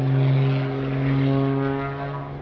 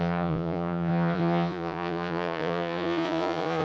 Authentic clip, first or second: first